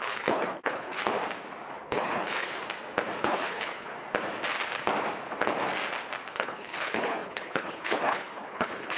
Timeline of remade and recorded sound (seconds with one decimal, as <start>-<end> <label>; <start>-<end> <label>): 0.0-1.0 remade; 1.0-1.8 recorded; 1.8-2.6 remade; 2.6-3.2 recorded; 3.2-3.9 remade; 3.9-6.3 recorded; 6.3-9.0 remade

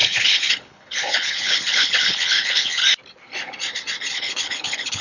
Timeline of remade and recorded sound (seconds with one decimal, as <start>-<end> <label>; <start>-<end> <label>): 0.0-2.8 remade; 2.8-4.1 recorded; 4.1-5.0 remade

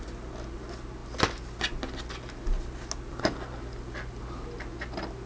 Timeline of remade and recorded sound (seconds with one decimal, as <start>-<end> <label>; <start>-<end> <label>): 0.0-5.3 recorded

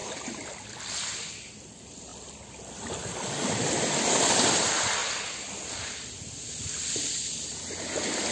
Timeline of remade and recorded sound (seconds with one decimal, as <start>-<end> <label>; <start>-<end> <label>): 0.0-8.3 recorded

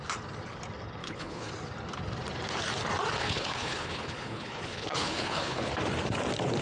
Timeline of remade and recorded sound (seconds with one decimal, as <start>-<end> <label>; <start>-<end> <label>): 0.0-1.0 recorded; 1.0-1.5 remade; 1.5-3.2 recorded; 3.2-5.7 remade; 5.7-6.6 recorded

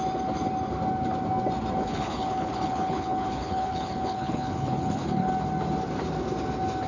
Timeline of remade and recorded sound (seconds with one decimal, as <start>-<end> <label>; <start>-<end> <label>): 0.0-1.8 recorded; 1.8-5.3 remade; 5.3-6.9 recorded

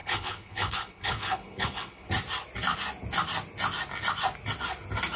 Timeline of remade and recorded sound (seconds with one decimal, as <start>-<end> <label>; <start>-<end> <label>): 0.0-2.1 remade; 2.1-5.2 recorded

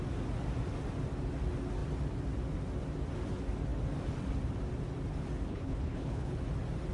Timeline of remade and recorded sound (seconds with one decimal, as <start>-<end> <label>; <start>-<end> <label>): 0.0-5.5 recorded; 5.5-6.4 remade; 6.4-6.9 recorded